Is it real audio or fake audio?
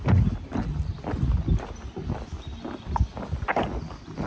real